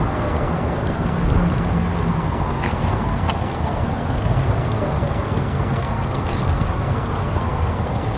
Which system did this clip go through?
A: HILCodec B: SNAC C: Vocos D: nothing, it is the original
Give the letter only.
B